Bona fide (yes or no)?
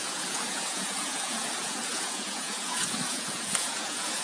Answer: no